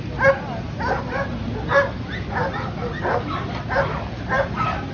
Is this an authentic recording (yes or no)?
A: yes